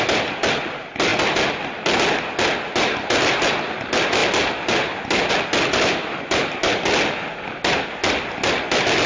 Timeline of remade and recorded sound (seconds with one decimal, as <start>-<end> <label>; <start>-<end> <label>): 0.0-9.1 recorded